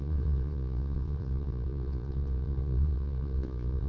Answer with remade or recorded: remade